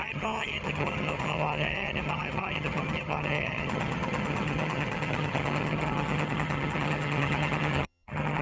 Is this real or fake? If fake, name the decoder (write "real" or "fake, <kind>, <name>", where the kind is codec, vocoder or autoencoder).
fake, vocoder, HiFi-GAN